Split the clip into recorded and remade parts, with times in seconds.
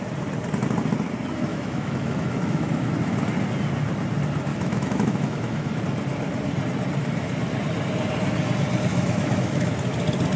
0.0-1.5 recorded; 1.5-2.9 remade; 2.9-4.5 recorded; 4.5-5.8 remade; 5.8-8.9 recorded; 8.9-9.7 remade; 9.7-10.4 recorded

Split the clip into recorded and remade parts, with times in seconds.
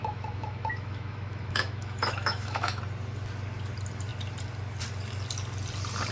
0.0-2.8 remade; 2.8-6.1 recorded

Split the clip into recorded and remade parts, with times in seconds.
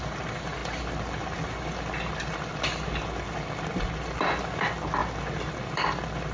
0.0-6.3 recorded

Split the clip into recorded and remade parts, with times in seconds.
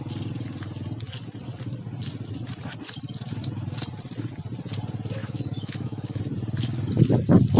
0.0-5.2 recorded; 5.2-6.2 remade; 6.2-7.6 recorded